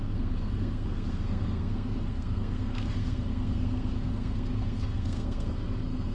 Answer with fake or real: fake